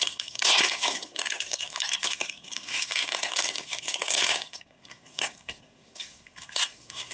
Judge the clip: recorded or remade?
remade